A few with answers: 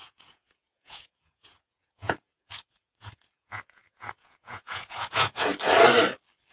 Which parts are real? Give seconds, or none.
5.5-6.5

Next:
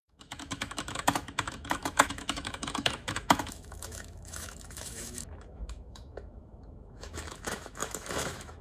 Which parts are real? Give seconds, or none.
none

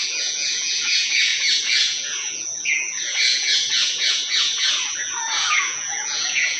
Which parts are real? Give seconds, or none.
none